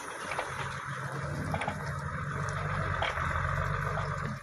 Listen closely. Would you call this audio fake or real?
real